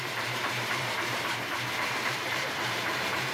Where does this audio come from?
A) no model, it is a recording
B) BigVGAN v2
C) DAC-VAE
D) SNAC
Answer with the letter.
B